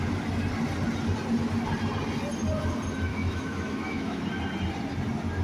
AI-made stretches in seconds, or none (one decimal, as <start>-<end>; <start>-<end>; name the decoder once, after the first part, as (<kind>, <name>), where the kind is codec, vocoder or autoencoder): 3.1-4.2 (autoencoder, DAC-VAE)